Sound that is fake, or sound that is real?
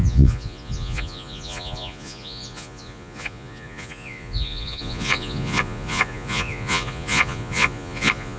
fake